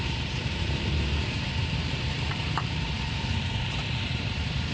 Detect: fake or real fake